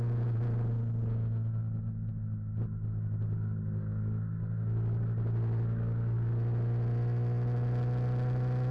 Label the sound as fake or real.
real